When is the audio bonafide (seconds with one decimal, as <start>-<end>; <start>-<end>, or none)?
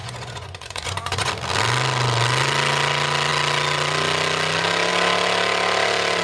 1.3-6.2